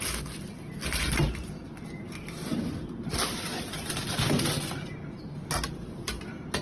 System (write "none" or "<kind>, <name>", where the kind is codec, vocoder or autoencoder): none